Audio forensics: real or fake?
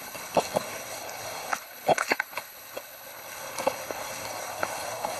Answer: fake